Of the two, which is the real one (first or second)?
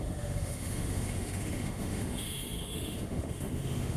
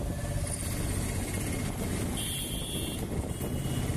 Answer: second